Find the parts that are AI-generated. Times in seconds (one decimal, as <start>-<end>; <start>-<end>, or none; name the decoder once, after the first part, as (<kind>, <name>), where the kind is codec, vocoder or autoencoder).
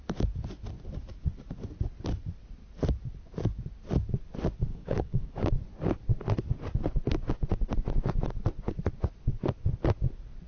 4.7-5.5 (codec, DAC)